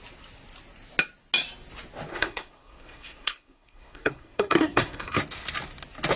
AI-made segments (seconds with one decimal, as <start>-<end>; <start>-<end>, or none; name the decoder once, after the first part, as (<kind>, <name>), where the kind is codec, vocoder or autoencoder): 2.1-5.2 (codec, SNAC)